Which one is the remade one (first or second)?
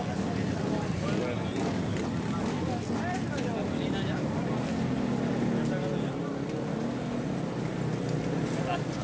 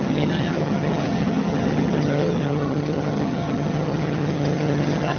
second